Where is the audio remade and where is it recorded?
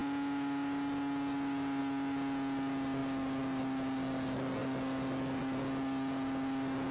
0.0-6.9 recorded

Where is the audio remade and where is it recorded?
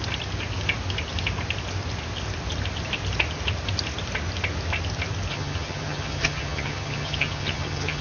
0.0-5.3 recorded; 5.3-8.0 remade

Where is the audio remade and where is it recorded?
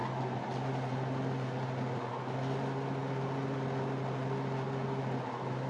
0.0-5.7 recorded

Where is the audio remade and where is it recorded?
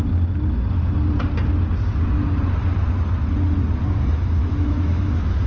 0.0-4.4 recorded; 4.4-5.5 remade